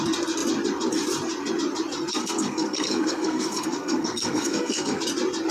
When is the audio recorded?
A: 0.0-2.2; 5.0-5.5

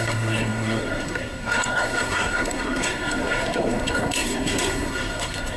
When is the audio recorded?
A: none

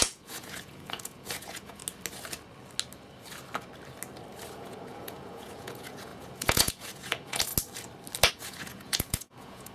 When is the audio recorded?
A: 1.8-4.5; 7.5-8.3

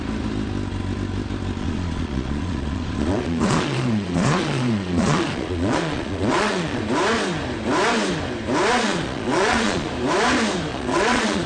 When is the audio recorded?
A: 0.0-1.6; 6.8-8.7; 9.9-10.7

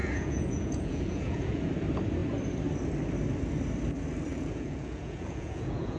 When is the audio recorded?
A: 1.7-4.3

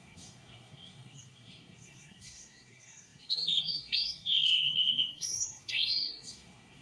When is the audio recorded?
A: none